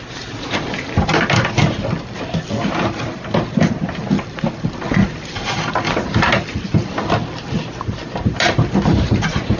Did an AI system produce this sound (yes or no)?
no